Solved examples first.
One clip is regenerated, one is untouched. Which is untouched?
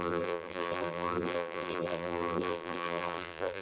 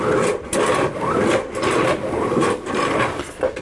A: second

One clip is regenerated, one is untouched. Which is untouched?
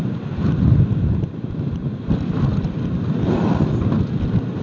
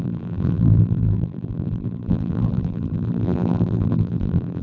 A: first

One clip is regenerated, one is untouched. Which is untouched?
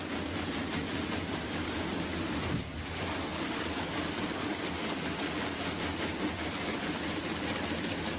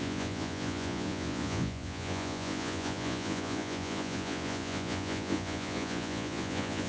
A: first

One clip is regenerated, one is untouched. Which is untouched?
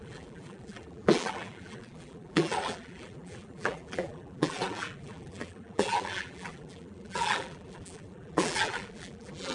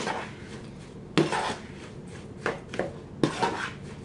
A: second